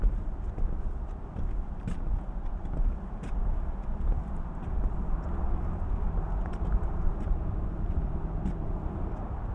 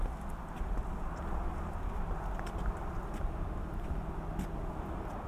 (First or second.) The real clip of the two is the second